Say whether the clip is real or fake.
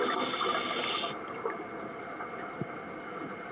real